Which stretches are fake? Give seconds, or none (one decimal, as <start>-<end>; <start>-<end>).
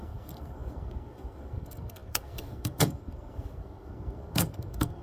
0.0-5.0